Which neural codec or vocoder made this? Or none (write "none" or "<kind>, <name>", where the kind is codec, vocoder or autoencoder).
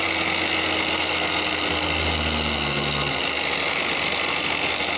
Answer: none